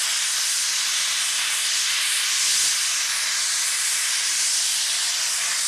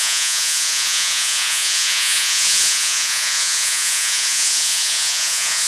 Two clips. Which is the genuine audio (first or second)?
first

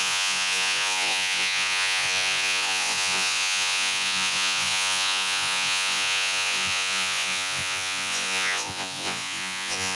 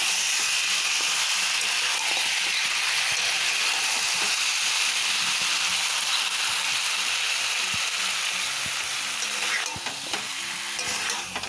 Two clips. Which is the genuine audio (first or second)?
second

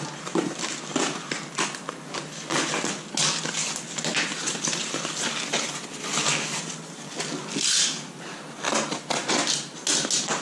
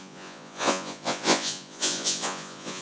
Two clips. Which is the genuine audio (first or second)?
first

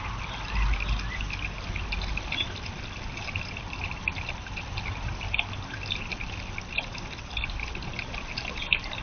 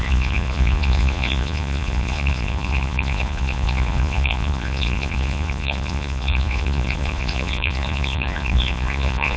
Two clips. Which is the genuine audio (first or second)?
first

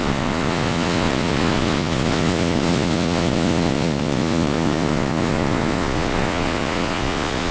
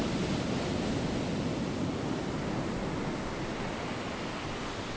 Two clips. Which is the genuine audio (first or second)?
second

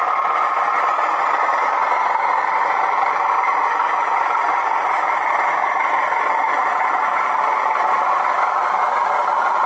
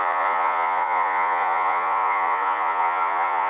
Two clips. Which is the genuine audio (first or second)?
first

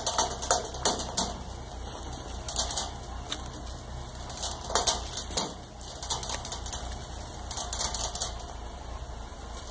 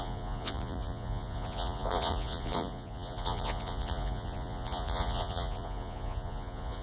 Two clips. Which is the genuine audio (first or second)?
first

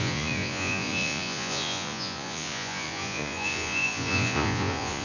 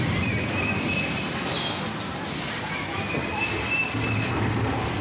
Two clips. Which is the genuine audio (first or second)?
second